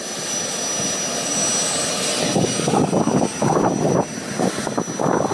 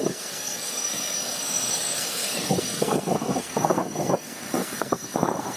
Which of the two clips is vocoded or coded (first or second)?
second